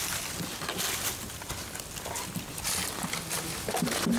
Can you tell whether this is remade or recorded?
recorded